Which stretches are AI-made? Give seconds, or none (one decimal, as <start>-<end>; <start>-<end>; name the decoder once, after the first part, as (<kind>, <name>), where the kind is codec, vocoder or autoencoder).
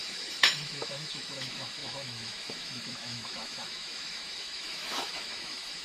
0.0-5.8 (autoencoder, DAC-VAE)